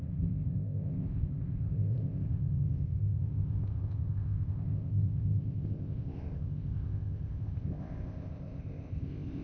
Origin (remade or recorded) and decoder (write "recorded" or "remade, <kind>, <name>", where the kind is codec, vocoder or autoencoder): remade, codec, ZipCodec